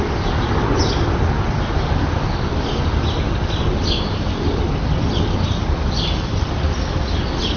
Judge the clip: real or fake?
real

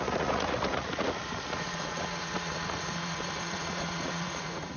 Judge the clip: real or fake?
fake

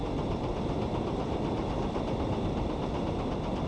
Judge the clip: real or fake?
real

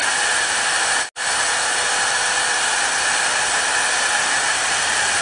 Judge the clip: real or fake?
real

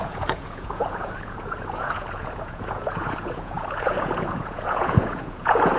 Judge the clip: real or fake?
fake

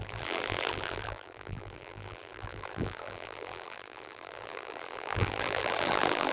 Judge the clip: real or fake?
fake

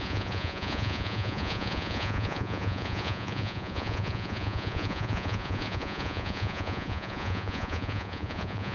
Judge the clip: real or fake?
fake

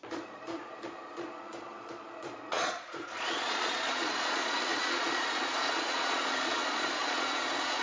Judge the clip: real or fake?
fake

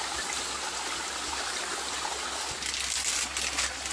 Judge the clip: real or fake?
real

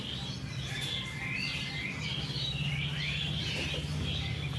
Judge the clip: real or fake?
real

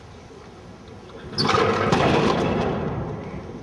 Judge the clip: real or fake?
real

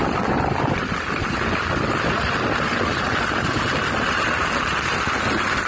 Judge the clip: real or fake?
real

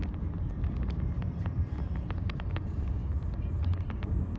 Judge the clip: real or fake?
real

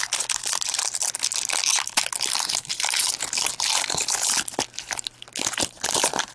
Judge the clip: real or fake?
real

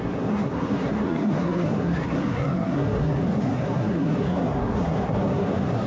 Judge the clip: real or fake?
fake